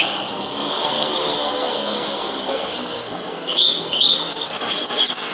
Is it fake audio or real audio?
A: fake